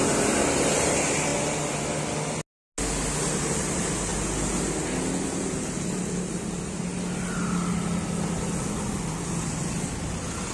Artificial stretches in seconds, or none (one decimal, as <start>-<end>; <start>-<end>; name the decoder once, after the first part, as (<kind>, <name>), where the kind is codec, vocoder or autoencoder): none